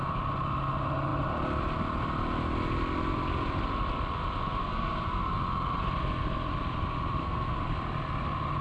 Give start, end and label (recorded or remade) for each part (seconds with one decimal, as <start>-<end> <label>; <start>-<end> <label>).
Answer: 0.0-4.6 recorded; 4.6-5.3 remade; 5.3-7.2 recorded; 7.2-7.7 remade; 7.7-8.6 recorded